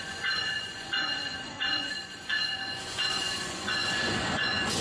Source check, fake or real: fake